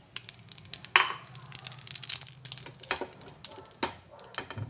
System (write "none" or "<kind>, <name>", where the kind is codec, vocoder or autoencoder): none